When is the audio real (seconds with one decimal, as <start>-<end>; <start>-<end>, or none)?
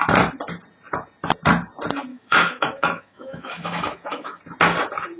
0.0-2.1; 4.4-5.2